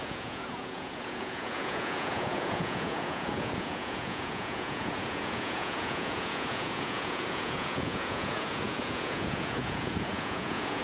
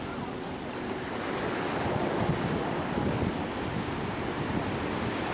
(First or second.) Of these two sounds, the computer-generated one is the first